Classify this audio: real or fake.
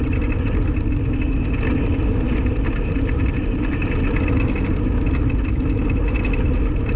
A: real